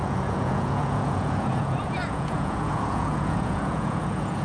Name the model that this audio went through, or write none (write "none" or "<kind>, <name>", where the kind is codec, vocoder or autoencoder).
vocoder, Vocos